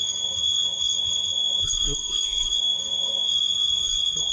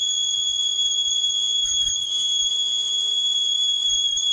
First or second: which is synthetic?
first